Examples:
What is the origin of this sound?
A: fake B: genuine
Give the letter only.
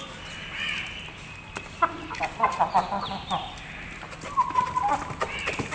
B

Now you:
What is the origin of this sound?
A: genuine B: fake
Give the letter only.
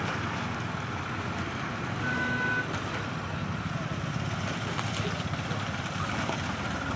A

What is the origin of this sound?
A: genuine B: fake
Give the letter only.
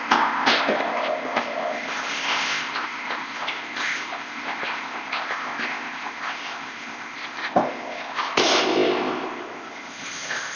B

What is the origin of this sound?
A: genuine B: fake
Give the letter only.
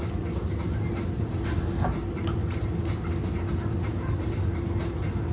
A